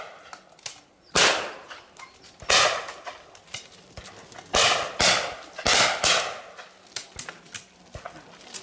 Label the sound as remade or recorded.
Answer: recorded